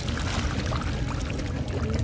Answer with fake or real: real